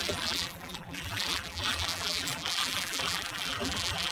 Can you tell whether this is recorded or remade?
remade